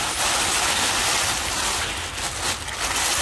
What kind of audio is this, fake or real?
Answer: real